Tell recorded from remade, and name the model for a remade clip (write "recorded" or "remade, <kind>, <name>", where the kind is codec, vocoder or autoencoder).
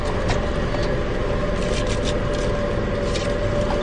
recorded